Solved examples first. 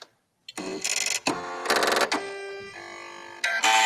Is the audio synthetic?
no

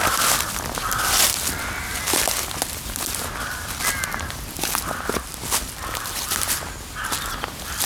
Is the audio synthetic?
no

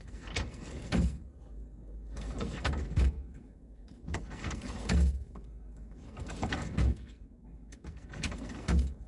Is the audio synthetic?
yes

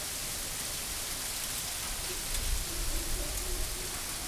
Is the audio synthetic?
no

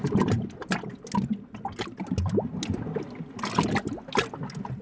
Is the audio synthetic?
no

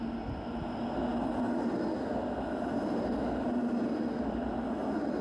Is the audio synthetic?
no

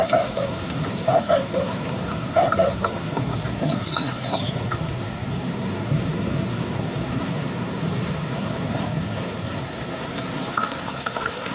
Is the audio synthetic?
yes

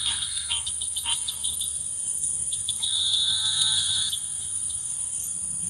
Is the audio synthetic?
yes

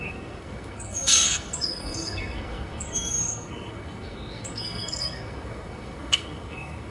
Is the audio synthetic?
yes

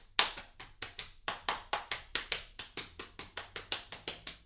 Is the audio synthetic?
no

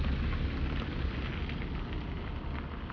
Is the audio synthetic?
no